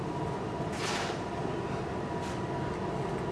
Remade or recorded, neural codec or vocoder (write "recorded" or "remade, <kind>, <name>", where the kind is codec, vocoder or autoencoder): recorded